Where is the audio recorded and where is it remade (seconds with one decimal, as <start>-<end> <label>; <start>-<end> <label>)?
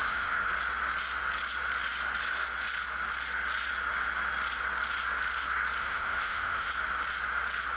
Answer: 0.0-0.5 remade; 0.5-5.8 recorded; 5.8-6.7 remade; 6.7-7.8 recorded